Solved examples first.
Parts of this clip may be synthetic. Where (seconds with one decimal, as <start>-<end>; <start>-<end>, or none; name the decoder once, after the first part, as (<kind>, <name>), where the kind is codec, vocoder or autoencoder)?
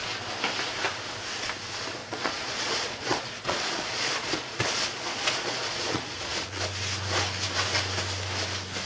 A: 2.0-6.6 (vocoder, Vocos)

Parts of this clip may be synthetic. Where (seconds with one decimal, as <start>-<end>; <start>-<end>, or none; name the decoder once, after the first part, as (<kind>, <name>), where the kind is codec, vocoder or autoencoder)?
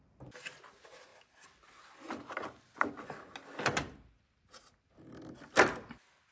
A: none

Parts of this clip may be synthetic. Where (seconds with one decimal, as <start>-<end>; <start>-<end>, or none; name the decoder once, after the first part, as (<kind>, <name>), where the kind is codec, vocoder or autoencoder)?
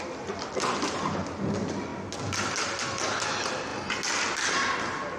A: none